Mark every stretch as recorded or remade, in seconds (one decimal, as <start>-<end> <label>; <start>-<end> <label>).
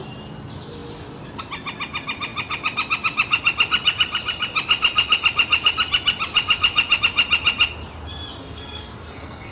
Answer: 0.0-8.4 recorded; 8.4-9.5 remade